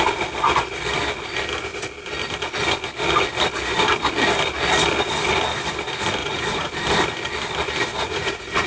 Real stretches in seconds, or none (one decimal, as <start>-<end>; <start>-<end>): 0.0-6.2; 6.7-7.9